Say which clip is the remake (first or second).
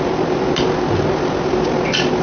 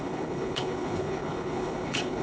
second